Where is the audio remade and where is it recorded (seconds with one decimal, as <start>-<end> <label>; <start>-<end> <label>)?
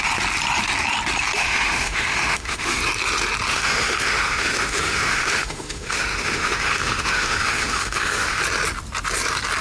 0.0-1.4 recorded; 1.4-2.8 remade; 2.8-3.5 recorded; 3.5-8.4 remade; 8.4-9.6 recorded